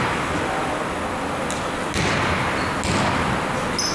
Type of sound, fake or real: real